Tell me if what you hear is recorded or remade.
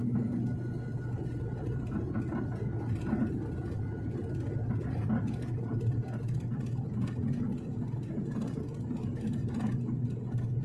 recorded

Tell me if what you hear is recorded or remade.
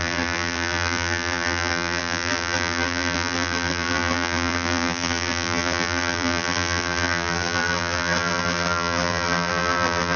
remade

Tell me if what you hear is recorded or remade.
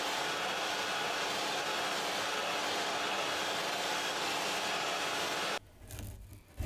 recorded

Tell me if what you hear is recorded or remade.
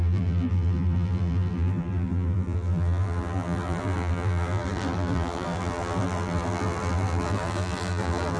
remade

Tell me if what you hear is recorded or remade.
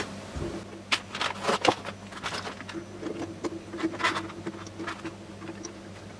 recorded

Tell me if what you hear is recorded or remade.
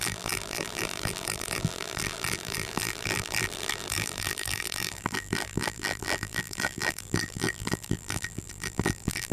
remade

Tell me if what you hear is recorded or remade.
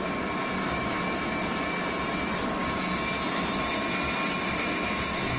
recorded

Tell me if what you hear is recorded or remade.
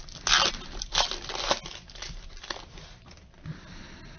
recorded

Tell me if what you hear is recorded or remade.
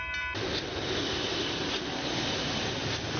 recorded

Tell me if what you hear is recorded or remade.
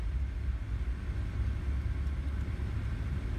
recorded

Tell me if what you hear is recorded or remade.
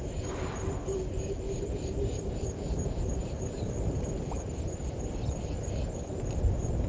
remade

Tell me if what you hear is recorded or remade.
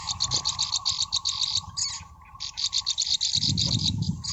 recorded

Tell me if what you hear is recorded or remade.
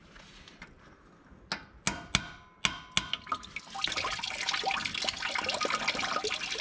recorded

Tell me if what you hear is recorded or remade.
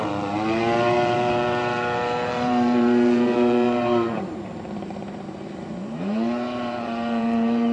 remade